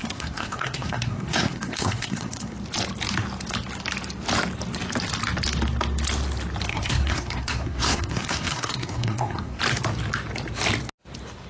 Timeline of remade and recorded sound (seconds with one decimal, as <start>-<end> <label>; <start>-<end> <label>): 0.0-2.5 remade; 2.5-6.7 recorded; 6.7-9.6 remade; 9.6-11.5 recorded